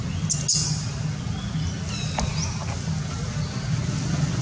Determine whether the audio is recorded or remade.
recorded